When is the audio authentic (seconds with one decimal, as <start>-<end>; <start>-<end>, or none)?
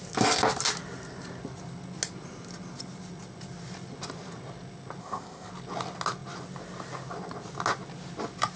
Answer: 0.0-5.0; 5.5-8.6